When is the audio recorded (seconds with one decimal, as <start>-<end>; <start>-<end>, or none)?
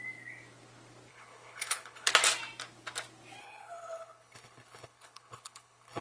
0.0-1.1; 2.1-3.4